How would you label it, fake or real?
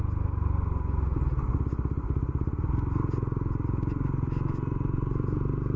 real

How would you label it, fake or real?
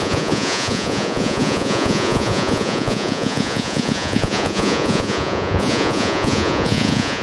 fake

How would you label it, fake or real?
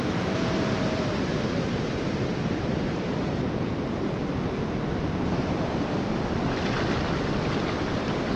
fake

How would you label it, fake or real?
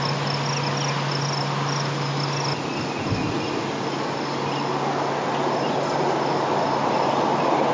real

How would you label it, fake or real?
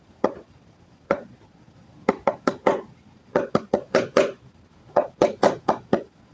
fake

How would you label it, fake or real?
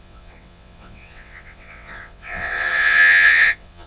fake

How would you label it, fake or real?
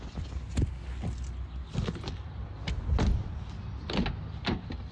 real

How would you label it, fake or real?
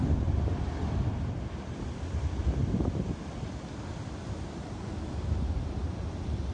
fake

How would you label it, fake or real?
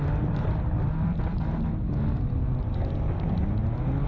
real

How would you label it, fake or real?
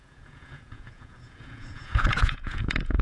fake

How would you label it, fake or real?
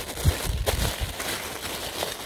real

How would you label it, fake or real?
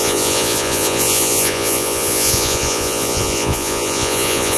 fake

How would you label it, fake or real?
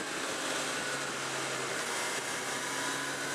real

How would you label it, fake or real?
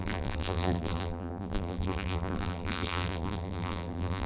fake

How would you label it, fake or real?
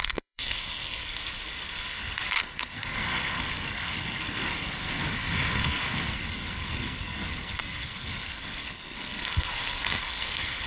fake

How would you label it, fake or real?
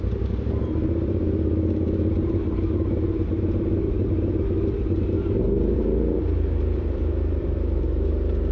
fake